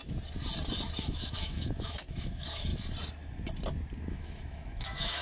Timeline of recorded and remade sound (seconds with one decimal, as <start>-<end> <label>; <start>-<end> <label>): 0.0-1.0 recorded; 1.0-2.7 remade; 2.7-4.1 recorded; 4.1-5.2 remade